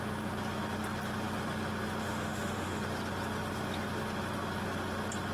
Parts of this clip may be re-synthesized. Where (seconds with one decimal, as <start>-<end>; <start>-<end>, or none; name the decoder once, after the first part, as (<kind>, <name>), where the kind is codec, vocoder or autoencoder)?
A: 2.0-2.8 (autoencoder, DAC-VAE)